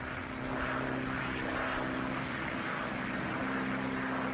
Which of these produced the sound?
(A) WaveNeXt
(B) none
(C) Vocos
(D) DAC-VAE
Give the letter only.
B